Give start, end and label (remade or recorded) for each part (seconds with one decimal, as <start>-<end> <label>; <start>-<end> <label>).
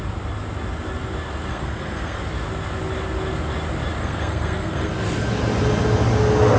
0.0-1.5 recorded; 1.5-2.2 remade; 2.2-4.0 recorded; 4.0-4.9 remade; 4.9-6.6 recorded